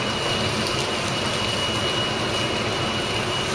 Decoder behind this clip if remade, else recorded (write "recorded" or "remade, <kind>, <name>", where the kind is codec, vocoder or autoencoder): recorded